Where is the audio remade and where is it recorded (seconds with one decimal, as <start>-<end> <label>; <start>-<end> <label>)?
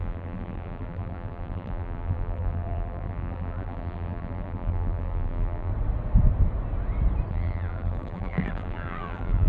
0.0-5.7 remade; 5.7-7.3 recorded; 7.3-9.5 remade